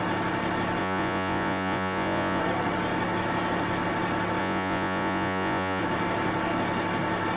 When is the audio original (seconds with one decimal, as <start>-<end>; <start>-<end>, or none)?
0.0-0.8; 2.4-4.4; 5.8-7.4